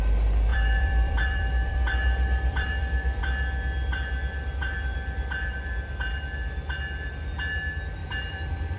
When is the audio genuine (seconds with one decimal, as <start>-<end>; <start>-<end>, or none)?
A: 0.0-0.5; 3.2-8.0